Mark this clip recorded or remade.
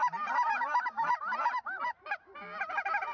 remade